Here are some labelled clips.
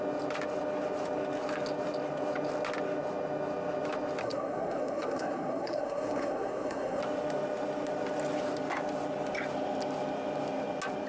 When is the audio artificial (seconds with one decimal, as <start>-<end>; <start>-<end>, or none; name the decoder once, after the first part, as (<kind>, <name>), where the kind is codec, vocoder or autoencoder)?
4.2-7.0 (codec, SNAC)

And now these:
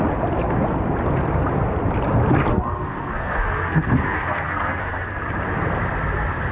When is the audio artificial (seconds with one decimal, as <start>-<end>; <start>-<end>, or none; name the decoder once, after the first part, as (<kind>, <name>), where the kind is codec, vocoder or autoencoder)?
2.5-5.2 (codec, SNAC)

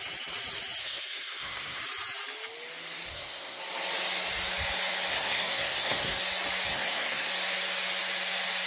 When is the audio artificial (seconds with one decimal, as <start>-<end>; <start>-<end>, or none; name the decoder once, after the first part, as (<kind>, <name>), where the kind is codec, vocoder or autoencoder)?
0.8-1.8 (codec, SNAC); 3.1-3.6; 5.1-6.2; 6.7-7.3